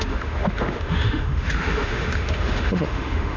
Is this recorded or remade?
remade